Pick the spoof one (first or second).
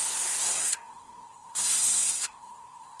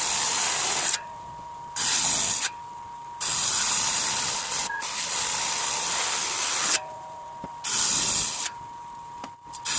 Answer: first